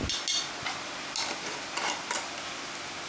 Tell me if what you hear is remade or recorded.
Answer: recorded